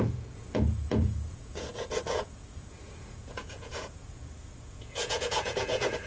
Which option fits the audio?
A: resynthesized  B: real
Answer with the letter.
A